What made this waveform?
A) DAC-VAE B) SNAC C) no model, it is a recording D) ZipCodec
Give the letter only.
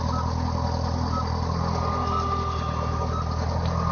C